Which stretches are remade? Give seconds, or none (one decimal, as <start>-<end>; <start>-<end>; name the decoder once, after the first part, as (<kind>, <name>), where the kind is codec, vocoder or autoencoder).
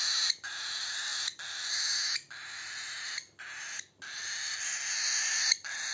none